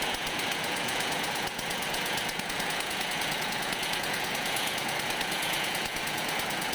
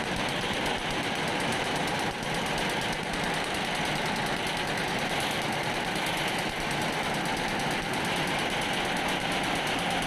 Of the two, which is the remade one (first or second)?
first